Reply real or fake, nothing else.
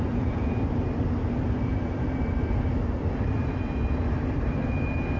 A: real